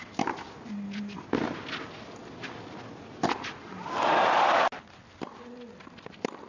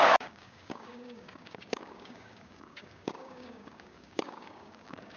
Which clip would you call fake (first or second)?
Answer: second